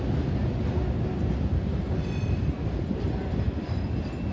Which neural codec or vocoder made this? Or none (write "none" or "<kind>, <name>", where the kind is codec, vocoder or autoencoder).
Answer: none